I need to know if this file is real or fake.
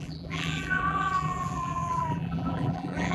fake